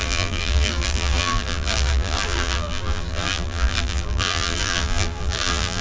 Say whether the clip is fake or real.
fake